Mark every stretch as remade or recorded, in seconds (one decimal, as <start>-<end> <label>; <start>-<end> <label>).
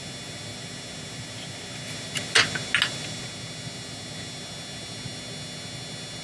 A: 0.0-6.2 recorded